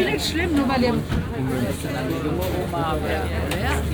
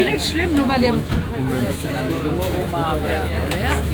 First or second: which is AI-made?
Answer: second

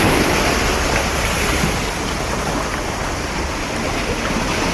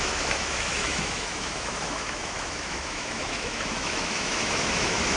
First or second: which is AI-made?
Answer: second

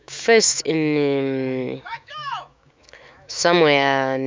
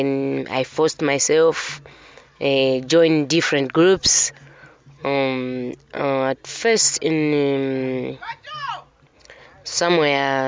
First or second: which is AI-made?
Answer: first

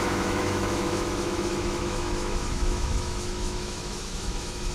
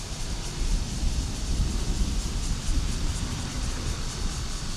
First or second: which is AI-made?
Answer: first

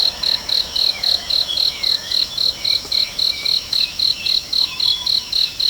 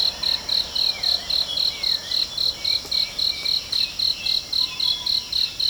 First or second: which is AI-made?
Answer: first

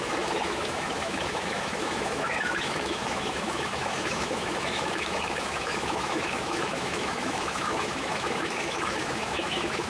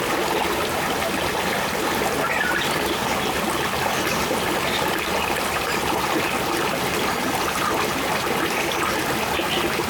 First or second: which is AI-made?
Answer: first